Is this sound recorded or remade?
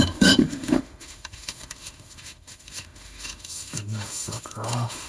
remade